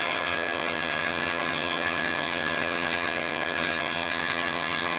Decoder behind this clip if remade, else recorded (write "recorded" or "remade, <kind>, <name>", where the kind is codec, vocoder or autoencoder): remade, vocoder, HiFi-GAN